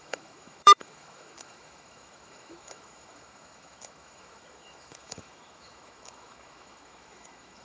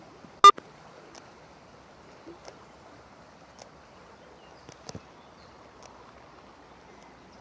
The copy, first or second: first